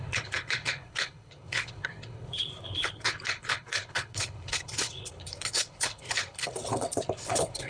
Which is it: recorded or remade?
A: remade